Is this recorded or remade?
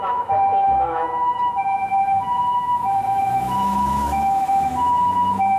remade